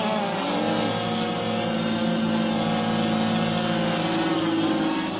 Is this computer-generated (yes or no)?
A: no